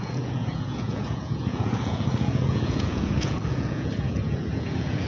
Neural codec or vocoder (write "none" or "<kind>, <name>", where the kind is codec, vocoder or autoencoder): vocoder, Vocos